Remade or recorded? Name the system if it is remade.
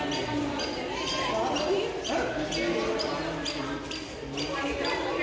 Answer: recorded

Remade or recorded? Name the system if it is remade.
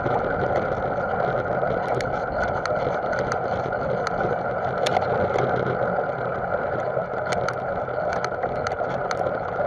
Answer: recorded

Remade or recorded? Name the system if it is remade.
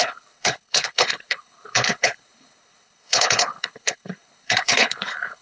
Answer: remade, codec, HILCodec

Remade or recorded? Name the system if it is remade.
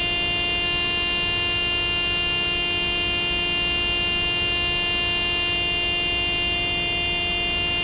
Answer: recorded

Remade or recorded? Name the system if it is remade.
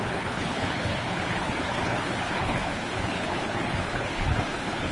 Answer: remade, codec, HILCodec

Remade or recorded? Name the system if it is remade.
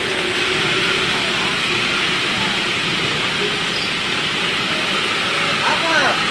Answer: recorded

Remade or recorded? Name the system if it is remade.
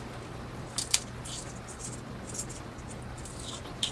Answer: recorded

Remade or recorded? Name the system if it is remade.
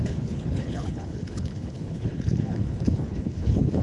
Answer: remade, codec, HILCodec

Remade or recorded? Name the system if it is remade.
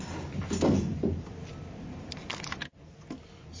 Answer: recorded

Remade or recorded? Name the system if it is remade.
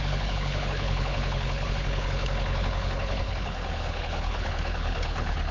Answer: remade, codec, HILCodec